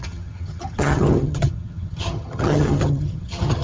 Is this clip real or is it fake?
fake